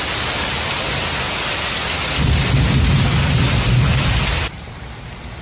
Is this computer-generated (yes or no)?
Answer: no